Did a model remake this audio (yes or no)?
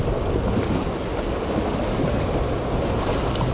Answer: no